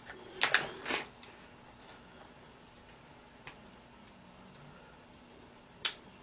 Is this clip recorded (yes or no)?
yes